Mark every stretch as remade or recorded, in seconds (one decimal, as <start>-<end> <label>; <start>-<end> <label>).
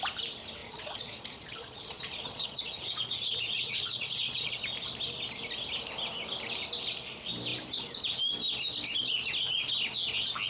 0.0-0.6 recorded; 0.6-4.5 remade; 4.5-10.5 recorded